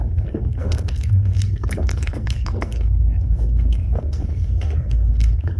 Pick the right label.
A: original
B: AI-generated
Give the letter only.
B